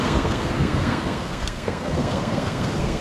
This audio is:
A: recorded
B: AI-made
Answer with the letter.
B